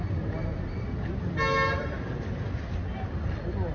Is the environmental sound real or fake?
real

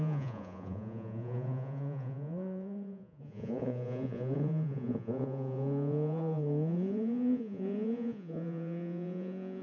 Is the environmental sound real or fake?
fake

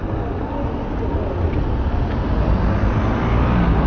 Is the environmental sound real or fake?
real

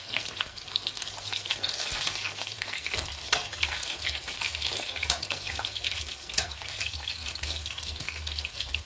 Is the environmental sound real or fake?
fake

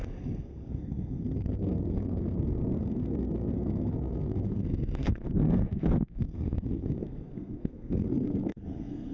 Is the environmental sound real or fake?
fake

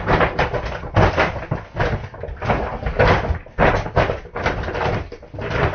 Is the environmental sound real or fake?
real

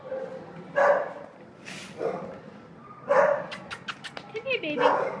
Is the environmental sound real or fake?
real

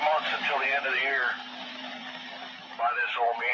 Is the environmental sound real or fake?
fake